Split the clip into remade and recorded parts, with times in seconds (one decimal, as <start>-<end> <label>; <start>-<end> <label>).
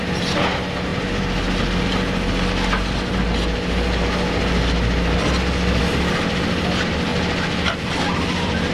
0.0-8.7 recorded